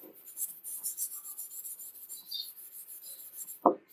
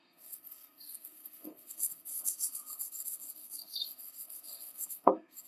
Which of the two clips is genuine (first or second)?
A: first